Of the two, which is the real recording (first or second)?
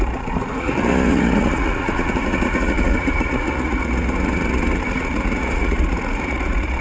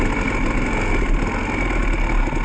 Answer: second